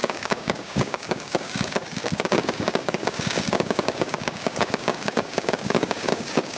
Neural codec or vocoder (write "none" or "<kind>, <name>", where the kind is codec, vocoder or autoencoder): codec, DAC